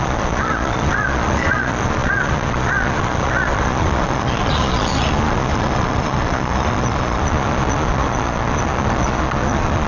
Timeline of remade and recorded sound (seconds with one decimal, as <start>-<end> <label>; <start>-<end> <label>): 0.0-9.9 remade